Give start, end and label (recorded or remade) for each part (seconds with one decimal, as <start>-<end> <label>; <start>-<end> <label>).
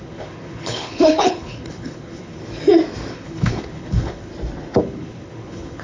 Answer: 0.0-2.4 remade; 2.4-3.1 recorded; 3.1-4.3 remade; 4.3-4.8 recorded; 4.8-5.8 remade